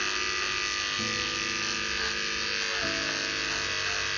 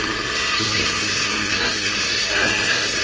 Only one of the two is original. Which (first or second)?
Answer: first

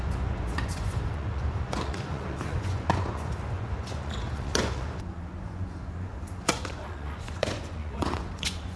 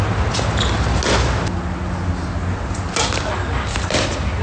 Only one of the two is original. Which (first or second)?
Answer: second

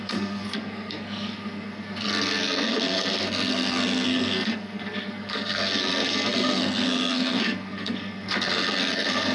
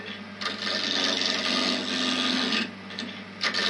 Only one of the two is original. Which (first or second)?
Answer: second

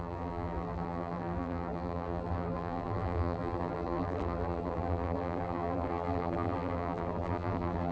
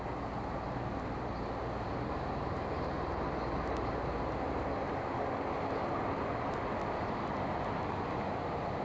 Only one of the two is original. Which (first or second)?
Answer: second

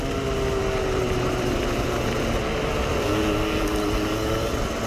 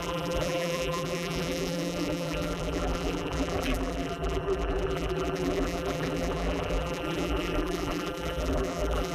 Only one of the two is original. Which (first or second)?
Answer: first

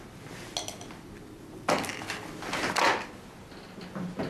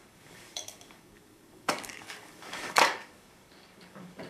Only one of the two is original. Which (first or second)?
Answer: first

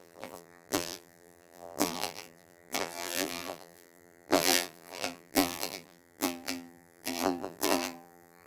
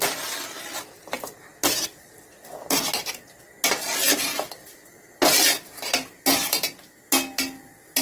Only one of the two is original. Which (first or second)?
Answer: second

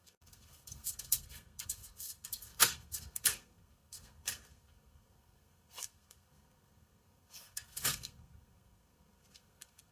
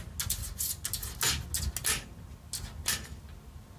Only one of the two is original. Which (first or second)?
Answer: second